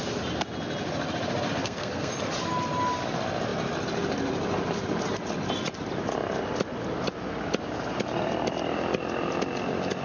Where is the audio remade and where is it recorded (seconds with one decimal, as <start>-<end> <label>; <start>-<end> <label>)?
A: 0.0-1.6 recorded; 1.6-2.1 remade; 2.1-10.0 recorded